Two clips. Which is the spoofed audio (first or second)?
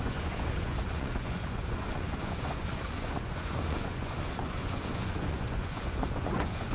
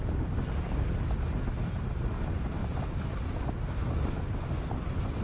first